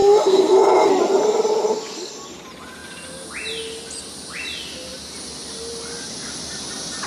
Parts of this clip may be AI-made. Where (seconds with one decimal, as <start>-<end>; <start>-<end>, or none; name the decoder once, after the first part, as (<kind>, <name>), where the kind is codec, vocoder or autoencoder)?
0.0-0.9 (codec, SNAC)